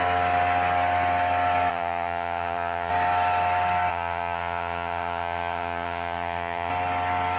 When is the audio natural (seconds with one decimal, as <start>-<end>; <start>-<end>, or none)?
0.0-1.7; 2.9-3.9; 6.7-7.4

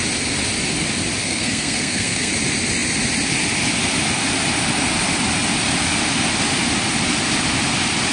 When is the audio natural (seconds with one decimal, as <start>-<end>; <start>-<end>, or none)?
0.0-1.2; 2.3-8.1

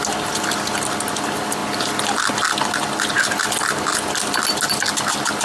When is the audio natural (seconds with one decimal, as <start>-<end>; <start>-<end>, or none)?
0.0-5.4